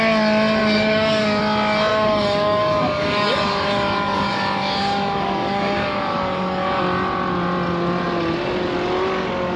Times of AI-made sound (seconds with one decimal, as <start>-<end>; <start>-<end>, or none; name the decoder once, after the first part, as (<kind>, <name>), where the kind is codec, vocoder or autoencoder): 0.6-1.4 (codec, DAC); 1.9-6.8